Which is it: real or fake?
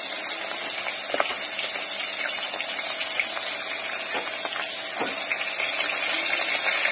real